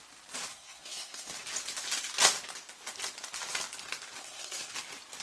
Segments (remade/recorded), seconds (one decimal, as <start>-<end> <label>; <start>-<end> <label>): 0.0-0.5 recorded; 0.5-1.3 remade; 1.3-4.2 recorded; 4.2-4.7 remade; 4.7-5.2 recorded